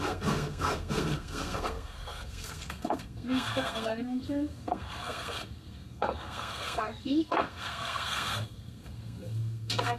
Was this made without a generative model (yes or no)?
no